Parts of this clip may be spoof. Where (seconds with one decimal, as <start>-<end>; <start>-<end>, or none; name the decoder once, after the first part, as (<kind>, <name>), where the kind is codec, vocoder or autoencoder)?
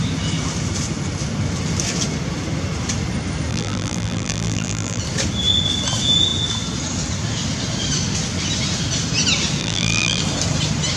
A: 3.5-5.0 (vocoder, BigVGAN v2); 9.6-10.2